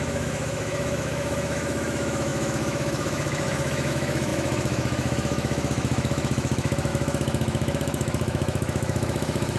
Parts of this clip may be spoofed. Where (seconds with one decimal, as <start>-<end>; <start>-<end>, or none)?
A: 0.0-9.6